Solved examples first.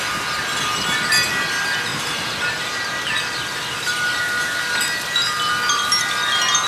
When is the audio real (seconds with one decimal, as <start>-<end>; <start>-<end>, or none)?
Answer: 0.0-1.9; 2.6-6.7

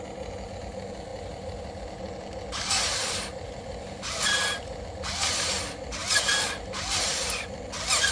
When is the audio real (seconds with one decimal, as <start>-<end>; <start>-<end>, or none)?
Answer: 0.0-8.1

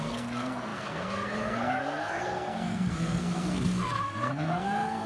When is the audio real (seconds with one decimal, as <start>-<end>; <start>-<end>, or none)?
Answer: none

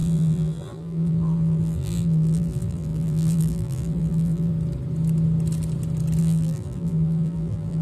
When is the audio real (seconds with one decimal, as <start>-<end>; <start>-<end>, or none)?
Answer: 4.5-6.2